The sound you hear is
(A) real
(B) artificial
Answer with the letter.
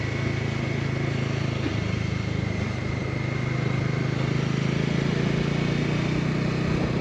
A